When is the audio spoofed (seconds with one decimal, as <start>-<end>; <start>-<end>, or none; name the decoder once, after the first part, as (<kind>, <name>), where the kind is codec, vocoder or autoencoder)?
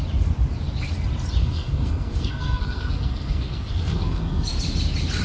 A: 1.4-4.5 (codec, SNAC)